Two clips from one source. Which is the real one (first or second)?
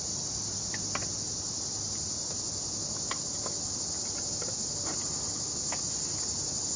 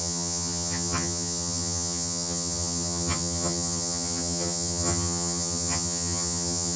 first